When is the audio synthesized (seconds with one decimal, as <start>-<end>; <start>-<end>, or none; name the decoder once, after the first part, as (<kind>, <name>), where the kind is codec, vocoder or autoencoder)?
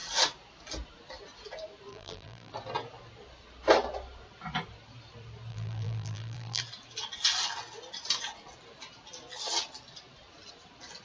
1.9-2.5 (vocoder, BigVGAN v2); 5.5-6.6